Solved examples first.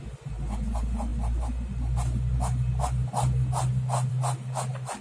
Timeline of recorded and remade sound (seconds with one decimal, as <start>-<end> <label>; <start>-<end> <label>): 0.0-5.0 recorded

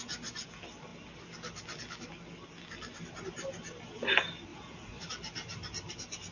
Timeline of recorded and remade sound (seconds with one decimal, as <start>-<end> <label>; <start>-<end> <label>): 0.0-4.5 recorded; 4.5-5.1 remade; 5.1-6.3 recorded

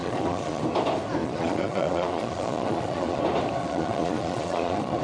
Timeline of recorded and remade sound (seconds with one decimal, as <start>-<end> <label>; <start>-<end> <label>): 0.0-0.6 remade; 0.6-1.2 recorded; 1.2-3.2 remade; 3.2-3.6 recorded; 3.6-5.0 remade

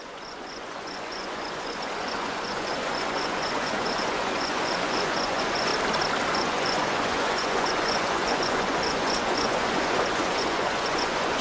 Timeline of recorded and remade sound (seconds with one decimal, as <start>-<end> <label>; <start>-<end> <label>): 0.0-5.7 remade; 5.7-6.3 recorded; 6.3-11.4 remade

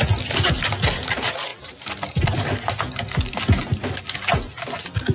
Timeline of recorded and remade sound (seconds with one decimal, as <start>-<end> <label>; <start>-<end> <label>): 0.0-5.1 recorded